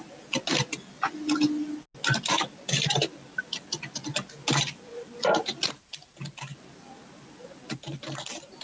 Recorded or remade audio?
recorded